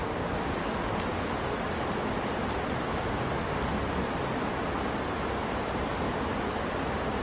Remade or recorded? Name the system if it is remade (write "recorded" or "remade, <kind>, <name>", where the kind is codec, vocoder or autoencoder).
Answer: recorded